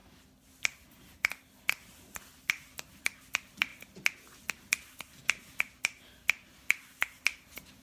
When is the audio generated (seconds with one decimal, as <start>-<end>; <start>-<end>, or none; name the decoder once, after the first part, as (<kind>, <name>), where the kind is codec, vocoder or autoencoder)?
0.0-3.0 (vocoder, BigVGAN v2)